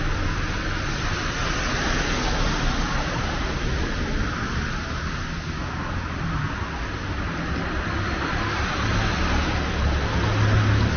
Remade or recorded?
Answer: recorded